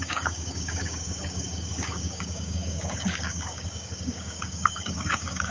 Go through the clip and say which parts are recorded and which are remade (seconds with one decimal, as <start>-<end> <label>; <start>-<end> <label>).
0.0-5.5 remade